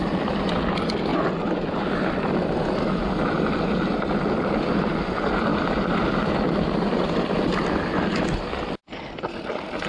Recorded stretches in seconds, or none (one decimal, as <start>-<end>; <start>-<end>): 0.0-9.9